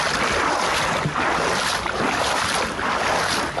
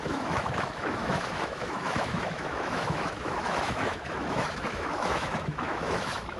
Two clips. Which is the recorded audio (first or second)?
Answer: first